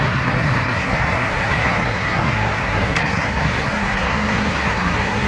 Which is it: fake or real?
fake